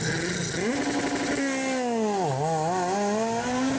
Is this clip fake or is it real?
real